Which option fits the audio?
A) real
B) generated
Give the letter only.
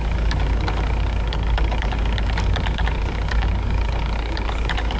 B